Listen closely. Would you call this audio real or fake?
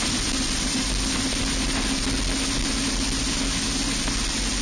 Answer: real